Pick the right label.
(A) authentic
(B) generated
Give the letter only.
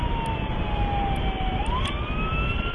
A